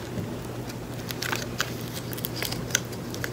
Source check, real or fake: real